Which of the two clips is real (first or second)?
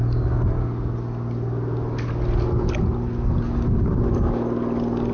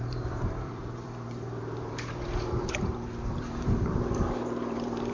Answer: first